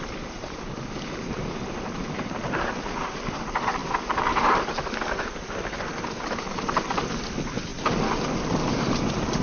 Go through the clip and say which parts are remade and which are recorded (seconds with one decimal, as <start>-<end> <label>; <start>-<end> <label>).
0.0-9.4 recorded